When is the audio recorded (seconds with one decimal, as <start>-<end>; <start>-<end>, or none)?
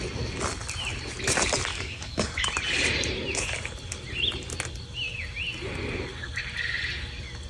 0.0-1.7; 2.5-7.5